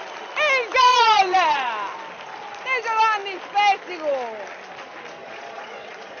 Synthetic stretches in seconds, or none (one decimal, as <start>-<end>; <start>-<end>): 0.8-1.7; 5.2-6.2